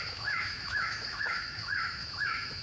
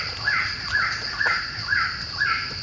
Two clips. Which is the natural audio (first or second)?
second